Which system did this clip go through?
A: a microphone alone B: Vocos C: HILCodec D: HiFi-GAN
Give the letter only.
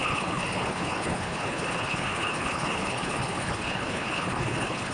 C